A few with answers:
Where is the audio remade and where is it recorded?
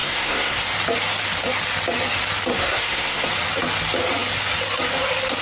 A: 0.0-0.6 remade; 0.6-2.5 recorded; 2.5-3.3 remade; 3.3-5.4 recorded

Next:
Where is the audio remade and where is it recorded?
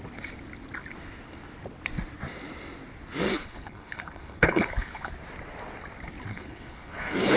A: 0.0-3.3 recorded; 3.3-5.1 remade; 5.1-6.3 recorded; 6.3-7.4 remade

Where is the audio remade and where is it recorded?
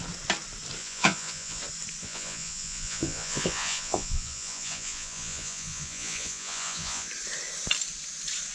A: 0.0-0.8 recorded; 0.8-1.6 remade; 1.6-2.0 recorded; 2.0-7.1 remade; 7.1-8.5 recorded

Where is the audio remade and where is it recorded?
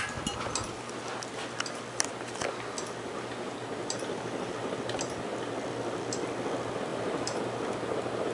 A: 0.0-6.9 recorded; 6.9-7.4 remade; 7.4-8.3 recorded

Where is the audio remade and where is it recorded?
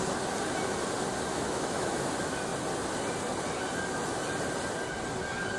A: 0.0-1.3 recorded; 1.3-2.0 remade; 2.0-5.6 recorded